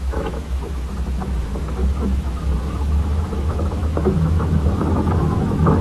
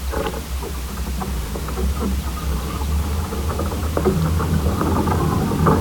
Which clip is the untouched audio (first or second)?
second